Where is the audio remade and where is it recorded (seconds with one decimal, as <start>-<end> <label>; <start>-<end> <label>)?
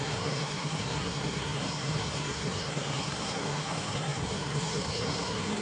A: 0.0-5.6 remade